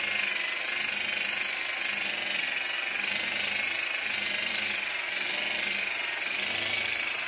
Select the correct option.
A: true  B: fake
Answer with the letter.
A